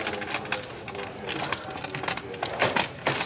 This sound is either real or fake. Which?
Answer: real